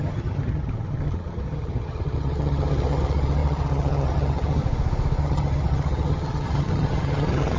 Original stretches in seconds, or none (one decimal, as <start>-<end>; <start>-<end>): 4.6-5.2